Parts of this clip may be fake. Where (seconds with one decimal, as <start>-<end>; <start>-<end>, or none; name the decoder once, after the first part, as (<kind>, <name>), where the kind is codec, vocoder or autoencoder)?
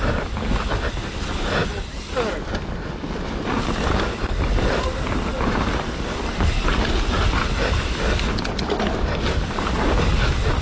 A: none